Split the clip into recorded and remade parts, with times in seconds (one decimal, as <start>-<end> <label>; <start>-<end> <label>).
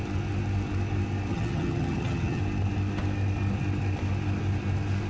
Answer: 0.0-1.3 recorded; 1.3-2.4 remade; 2.4-5.1 recorded